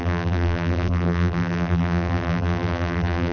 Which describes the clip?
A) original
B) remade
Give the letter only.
B